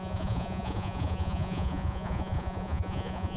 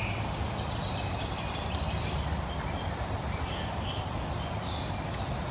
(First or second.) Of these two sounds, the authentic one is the second